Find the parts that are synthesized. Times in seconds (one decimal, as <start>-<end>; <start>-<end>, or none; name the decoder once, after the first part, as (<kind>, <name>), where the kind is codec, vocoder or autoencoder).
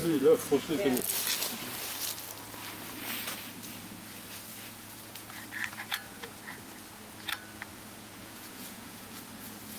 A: 0.0-0.8 (vocoder, Vocos); 4.5-5.3; 5.9-6.4; 7.7-9.2